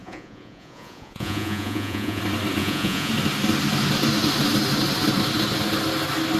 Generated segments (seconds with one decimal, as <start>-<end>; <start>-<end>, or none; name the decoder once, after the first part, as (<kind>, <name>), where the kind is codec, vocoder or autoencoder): 0.0-2.2 (vocoder, Vocos); 2.6-3.1